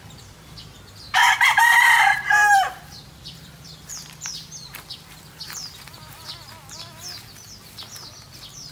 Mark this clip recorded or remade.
remade